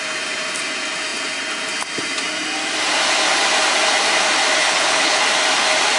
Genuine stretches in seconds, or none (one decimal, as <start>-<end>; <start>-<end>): 0.0-4.6; 5.2-6.0